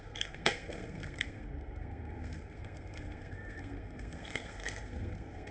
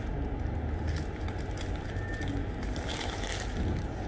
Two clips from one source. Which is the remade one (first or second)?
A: first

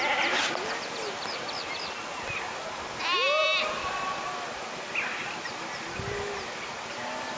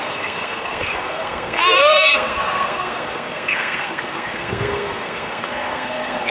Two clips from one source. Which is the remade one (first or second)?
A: second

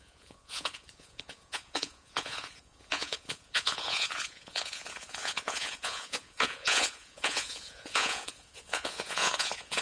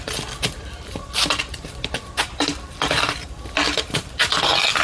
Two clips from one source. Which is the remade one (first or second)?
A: first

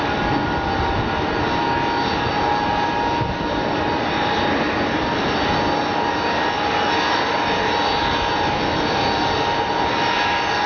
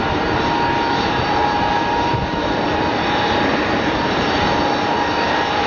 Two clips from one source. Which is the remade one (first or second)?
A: second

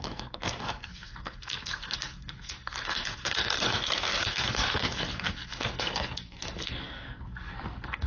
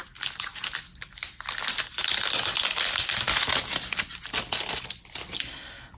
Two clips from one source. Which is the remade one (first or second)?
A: first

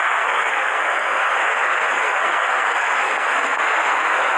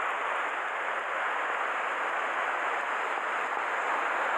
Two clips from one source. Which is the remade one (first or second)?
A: first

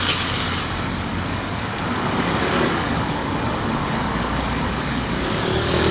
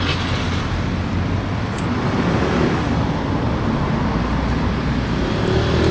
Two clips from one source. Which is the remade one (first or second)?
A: first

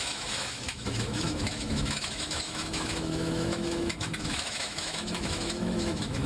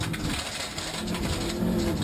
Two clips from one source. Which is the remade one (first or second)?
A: first